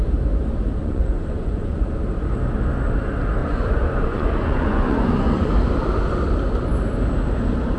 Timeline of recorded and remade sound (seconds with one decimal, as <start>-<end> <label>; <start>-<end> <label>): 0.0-0.8 recorded; 0.8-1.8 remade; 1.8-3.4 recorded; 3.4-5.5 remade; 5.5-7.8 recorded